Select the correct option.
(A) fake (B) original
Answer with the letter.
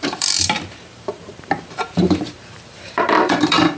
A